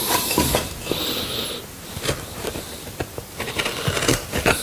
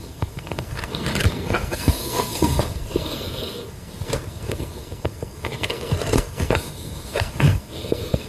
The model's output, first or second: second